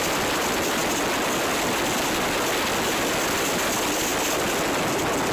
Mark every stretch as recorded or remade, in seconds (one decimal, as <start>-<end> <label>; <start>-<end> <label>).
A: 0.0-5.3 recorded